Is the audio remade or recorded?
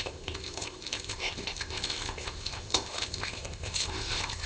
remade